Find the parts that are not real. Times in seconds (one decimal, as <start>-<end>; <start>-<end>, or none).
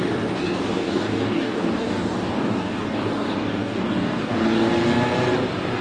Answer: 0.0-4.7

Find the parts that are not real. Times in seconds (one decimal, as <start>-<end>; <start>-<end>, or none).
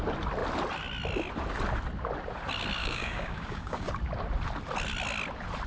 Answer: 2.8-3.9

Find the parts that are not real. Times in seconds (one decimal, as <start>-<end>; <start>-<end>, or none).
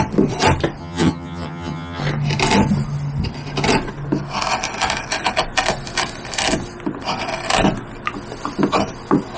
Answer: 0.8-2.0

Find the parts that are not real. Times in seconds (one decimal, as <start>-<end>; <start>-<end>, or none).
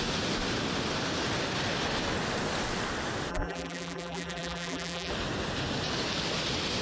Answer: 3.3-5.1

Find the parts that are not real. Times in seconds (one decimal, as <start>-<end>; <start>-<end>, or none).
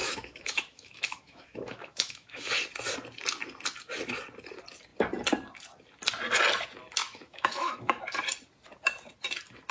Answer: 0.0-2.5; 7.0-8.0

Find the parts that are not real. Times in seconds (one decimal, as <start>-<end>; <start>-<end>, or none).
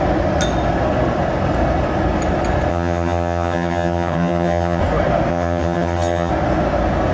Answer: 2.7-4.8; 5.3-6.3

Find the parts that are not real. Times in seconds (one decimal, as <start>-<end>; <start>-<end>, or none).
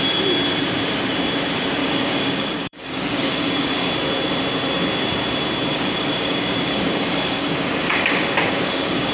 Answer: 1.8-3.9; 5.7-9.1